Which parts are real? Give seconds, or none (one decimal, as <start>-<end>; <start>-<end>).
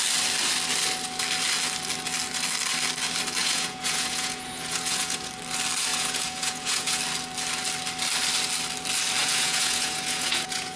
0.0-3.4; 5.3-5.9; 7.0-9.2